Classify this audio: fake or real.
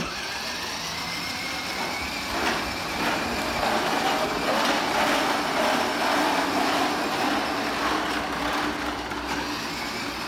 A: real